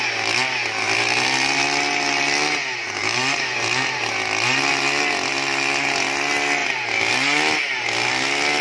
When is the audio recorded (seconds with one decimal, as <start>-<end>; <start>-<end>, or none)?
0.0-8.6